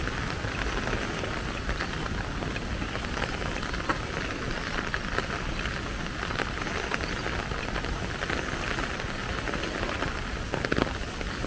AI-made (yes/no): no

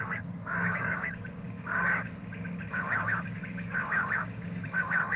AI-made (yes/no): yes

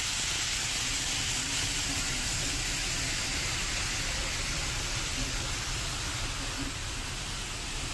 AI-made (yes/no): no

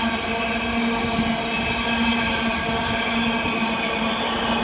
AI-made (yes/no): no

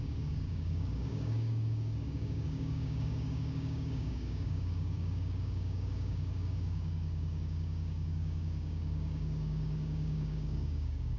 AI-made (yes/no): yes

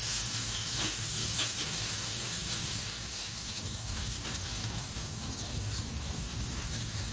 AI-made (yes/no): yes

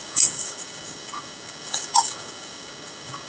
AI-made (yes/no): yes